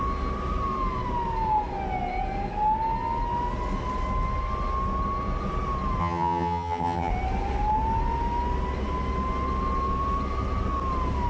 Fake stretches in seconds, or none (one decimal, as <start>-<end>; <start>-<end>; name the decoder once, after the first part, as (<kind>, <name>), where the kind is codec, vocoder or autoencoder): 6.0-7.1 (vocoder, HiFi-GAN)